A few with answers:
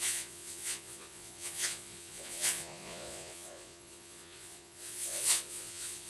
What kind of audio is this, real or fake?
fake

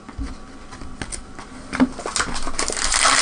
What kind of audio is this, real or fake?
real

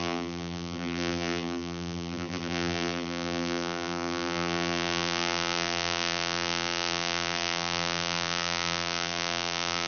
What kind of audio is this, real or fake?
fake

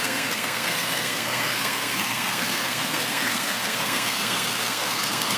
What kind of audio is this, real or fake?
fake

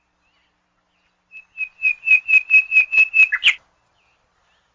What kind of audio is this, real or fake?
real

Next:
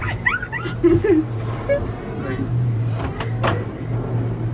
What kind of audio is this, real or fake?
fake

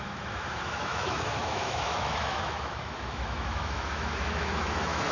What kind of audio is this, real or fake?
fake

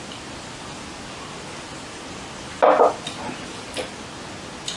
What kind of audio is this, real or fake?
real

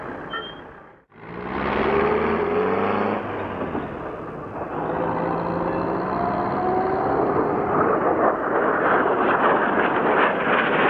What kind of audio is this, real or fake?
real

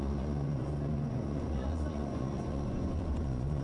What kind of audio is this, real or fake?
fake